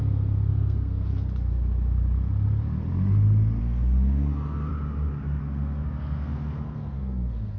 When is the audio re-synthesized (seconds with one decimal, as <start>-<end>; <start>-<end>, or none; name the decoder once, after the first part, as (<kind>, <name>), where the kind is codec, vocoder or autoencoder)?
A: 0.0-1.1 (codec, SNAC); 3.6-4.7; 5.4-7.6